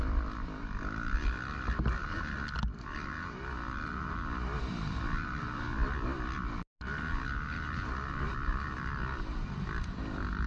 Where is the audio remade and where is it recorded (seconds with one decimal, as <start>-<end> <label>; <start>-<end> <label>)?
0.0-10.5 recorded